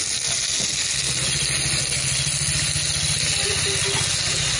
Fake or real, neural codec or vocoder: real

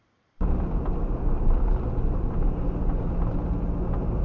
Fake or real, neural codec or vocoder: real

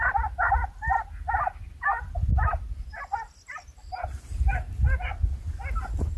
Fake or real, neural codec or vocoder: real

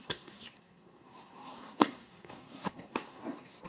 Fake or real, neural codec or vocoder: fake, codec, SNAC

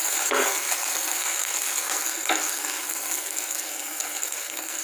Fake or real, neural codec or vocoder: fake, codec, SNAC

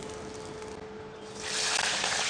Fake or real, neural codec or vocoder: real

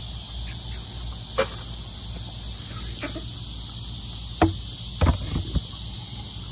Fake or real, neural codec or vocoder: real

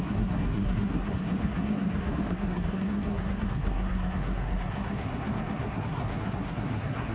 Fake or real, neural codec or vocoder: fake, codec, SNAC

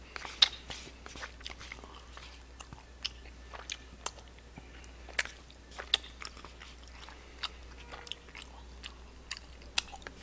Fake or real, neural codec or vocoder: real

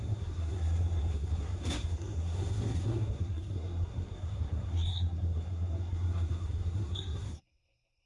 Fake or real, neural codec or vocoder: fake, codec, SNAC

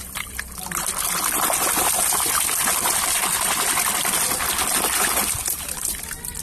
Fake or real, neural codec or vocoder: real